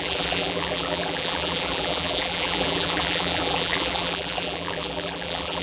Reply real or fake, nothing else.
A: fake